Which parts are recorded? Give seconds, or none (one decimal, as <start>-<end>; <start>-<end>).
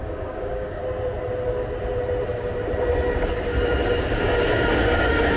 0.8-4.0